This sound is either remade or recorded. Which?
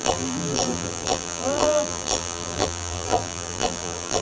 remade